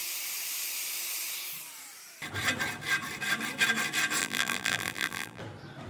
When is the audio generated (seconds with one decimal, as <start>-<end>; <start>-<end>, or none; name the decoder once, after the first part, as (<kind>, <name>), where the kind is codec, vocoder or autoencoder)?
4.2-5.4 (vocoder, BigVGAN v2)